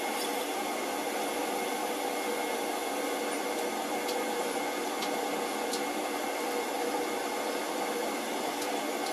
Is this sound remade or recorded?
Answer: recorded